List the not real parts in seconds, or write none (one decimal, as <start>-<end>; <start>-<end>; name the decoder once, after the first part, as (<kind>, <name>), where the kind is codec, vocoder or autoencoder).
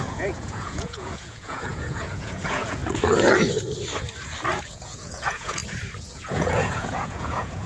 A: 0.0-2.8 (vocoder, Vocos); 4.7-5.6; 6.1-7.7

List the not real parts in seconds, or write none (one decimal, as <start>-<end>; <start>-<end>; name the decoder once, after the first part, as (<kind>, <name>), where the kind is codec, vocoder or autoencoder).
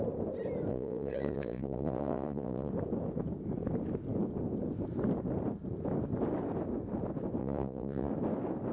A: 0.7-2.7 (vocoder, Vocos); 7.4-8.1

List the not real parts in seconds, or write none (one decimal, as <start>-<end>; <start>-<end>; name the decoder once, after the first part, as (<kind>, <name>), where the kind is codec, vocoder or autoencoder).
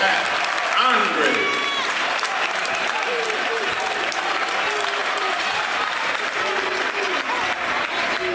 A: 1.0-3.7 (vocoder, BigVGAN v2); 5.0-6.2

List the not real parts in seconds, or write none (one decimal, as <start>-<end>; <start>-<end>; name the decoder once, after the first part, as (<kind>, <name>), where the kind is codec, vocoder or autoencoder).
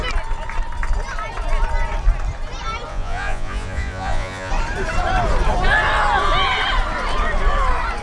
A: 2.9-4.5 (vocoder, Vocos)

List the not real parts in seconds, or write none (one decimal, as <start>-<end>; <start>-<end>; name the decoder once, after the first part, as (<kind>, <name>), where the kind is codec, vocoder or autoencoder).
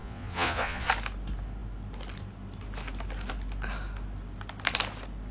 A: 0.0-0.9 (vocoder, Vocos)